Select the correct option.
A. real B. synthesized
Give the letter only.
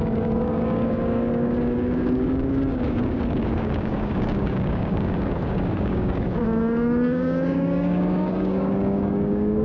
B